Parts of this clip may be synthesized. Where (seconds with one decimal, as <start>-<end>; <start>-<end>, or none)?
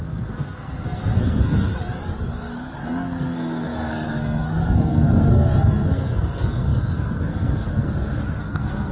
0.0-1.7; 2.8-8.9